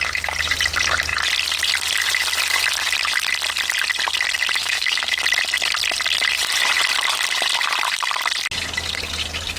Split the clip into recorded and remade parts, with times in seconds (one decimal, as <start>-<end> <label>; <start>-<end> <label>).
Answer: 0.0-4.6 recorded; 4.6-5.2 remade; 5.2-9.6 recorded